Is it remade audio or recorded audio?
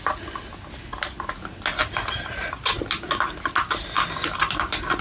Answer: recorded